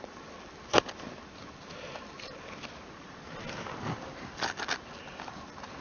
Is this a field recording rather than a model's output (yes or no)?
yes